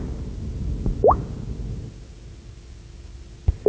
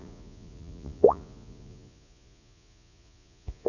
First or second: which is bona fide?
first